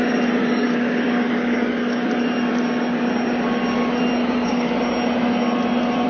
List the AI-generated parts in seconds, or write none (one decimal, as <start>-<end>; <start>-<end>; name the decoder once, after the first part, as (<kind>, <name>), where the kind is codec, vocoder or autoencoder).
0.4-2.1 (codec, DAC); 4.2-4.7